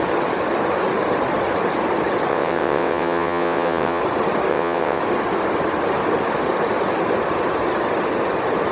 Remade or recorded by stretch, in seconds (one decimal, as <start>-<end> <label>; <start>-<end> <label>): 0.0-2.3 recorded; 2.3-4.0 remade; 4.0-4.5 recorded; 4.5-5.0 remade; 5.0-8.7 recorded